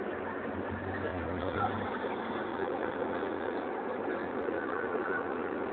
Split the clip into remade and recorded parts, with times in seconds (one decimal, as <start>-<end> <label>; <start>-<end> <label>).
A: 0.0-1.1 recorded; 1.1-1.6 remade; 1.6-2.5 recorded; 2.5-3.7 remade; 3.7-4.2 recorded; 4.2-5.7 remade